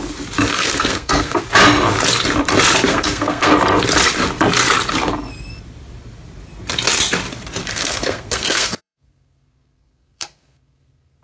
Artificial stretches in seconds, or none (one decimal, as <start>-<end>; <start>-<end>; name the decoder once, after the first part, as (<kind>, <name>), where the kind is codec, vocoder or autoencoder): 0.5-1.4 (codec, SNAC); 2.9-3.5; 7.6-11.2